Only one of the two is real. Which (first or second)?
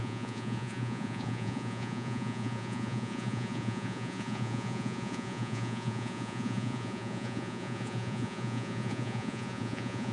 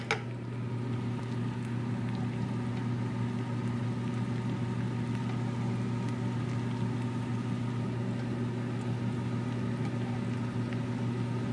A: second